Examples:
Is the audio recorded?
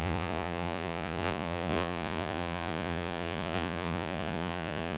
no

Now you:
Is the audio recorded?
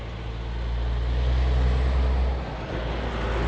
yes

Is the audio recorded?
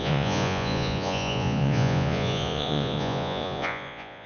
no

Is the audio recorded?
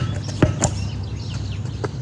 yes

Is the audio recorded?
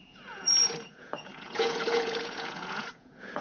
no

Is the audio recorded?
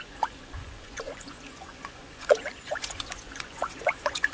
no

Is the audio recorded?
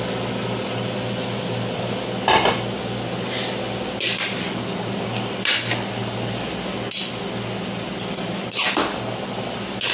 yes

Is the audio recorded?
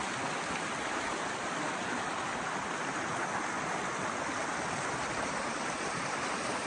yes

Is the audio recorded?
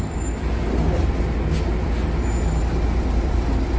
yes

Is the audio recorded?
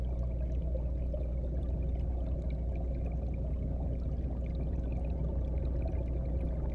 yes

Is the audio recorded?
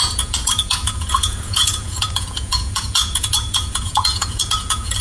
no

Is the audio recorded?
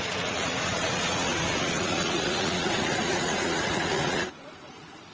no